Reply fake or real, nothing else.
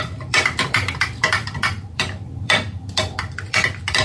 fake